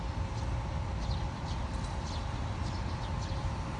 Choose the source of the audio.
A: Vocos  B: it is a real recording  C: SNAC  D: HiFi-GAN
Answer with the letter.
B